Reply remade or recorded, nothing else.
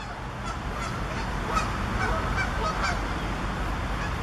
recorded